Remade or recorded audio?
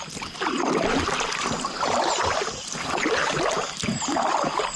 recorded